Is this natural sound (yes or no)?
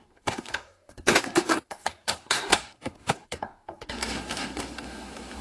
no